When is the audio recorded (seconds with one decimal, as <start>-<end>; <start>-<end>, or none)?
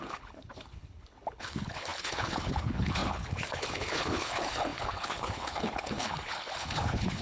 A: none